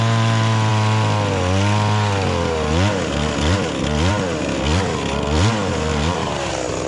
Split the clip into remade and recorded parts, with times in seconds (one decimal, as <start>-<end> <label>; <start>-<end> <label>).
0.0-5.9 recorded; 5.9-6.5 remade; 6.5-6.9 recorded